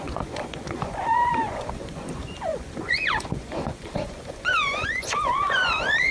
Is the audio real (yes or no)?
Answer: no